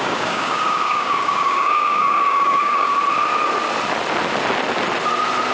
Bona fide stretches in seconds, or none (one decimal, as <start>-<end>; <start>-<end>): 2.9-5.5